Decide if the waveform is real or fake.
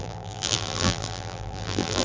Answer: fake